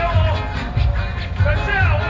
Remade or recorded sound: recorded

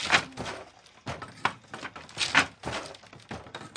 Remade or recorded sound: recorded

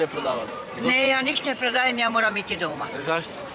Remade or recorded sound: remade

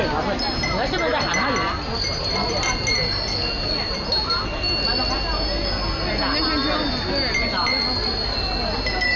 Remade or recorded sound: recorded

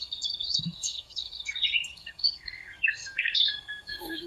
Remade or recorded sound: remade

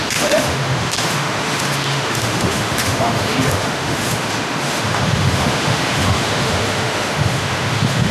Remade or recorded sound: remade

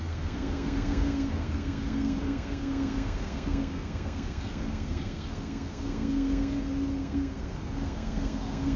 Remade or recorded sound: remade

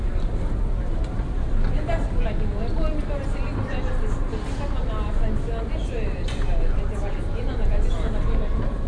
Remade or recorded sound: recorded